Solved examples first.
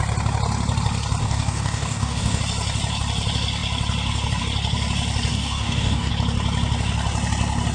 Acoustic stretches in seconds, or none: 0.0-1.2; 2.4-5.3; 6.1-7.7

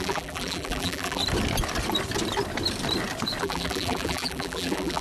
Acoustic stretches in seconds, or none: 1.2-3.4

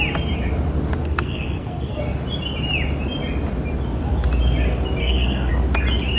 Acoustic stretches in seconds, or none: 0.0-1.0; 2.0-5.0; 5.5-6.2

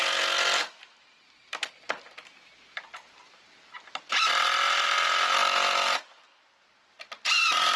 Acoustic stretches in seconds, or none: 0.0-7.8

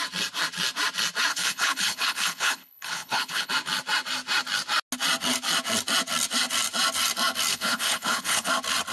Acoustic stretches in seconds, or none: 0.0-1.3; 3.5-7.5; 8.5-8.9

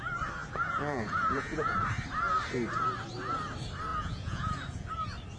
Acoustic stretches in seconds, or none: 0.0-0.4; 1.9-3.9; 4.9-5.4